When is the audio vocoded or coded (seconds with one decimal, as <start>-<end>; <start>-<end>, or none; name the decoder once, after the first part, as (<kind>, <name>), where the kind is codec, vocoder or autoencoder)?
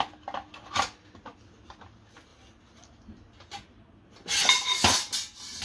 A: none